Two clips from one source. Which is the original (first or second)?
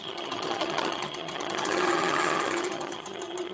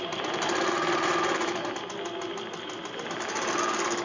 second